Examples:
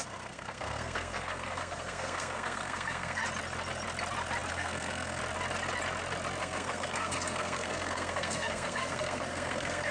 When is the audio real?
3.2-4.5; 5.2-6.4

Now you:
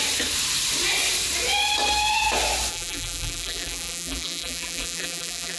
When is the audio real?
0.0-2.7